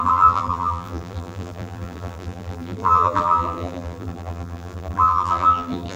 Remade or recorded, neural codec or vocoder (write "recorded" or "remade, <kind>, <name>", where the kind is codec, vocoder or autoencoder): remade, vocoder, BigVGAN v2